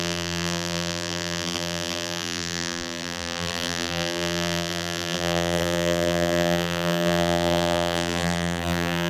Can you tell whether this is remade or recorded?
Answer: remade